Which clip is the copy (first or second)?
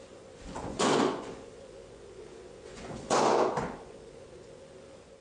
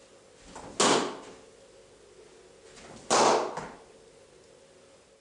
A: first